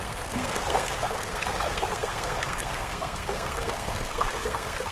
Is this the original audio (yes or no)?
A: no